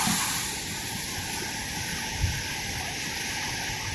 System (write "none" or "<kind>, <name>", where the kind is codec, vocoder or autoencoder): none